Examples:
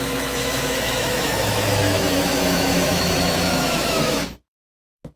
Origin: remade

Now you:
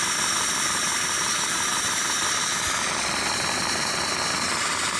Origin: recorded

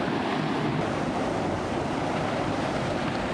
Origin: recorded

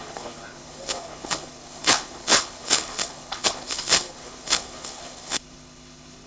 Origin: remade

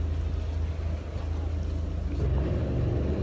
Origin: recorded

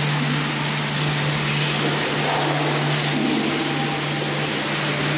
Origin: recorded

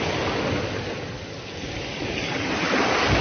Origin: recorded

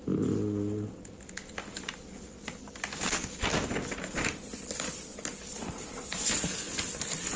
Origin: recorded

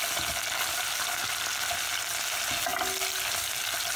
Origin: recorded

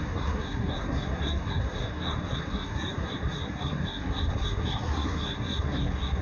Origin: remade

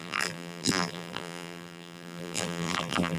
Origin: remade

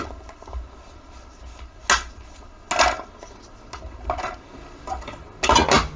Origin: recorded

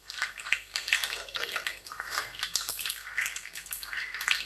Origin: remade